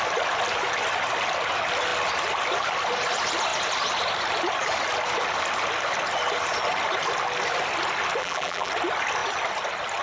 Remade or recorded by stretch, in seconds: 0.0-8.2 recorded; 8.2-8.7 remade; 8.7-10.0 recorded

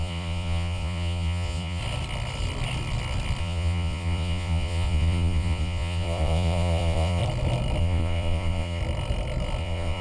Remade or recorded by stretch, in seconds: 0.0-1.8 remade; 1.8-3.4 recorded; 3.4-7.2 remade; 7.2-7.8 recorded; 7.8-8.8 remade; 8.8-9.6 recorded; 9.6-10.0 remade

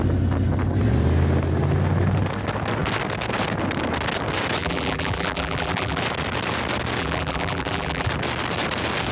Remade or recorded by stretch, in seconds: 0.0-4.6 recorded; 4.6-6.0 remade; 6.0-7.0 recorded; 7.0-8.1 remade; 8.1-9.1 recorded